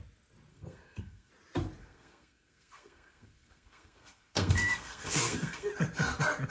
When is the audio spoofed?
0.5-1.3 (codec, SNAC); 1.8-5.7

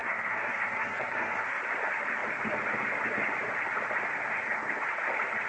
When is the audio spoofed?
0.0-1.6 (codec, SNAC)

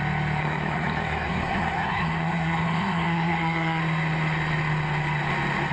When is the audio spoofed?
0.4-3.8 (codec, SNAC)